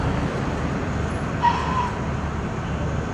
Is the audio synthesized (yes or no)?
no